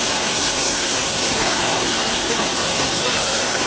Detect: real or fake fake